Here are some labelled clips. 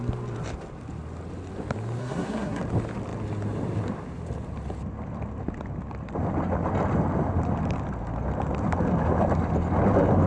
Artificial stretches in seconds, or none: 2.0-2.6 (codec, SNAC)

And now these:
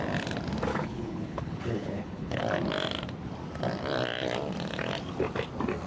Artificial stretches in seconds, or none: 0.7-2.4 (codec, HILCodec)

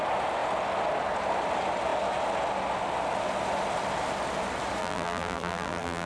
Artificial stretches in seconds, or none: 4.8-6.1 (vocoder, BigVGAN v2)

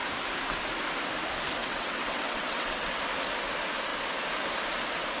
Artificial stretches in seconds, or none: 1.6-3.0 (vocoder, WaveNeXt)